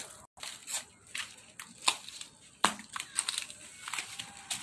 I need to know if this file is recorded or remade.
recorded